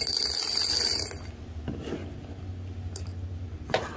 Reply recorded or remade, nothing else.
recorded